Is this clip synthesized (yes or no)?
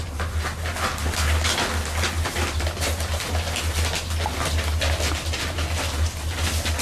no